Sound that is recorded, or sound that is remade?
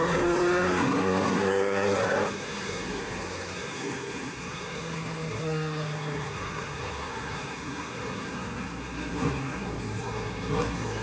remade